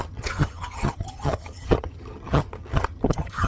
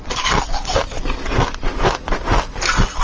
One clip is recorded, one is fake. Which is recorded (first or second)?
second